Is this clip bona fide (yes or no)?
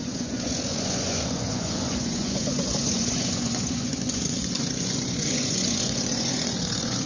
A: no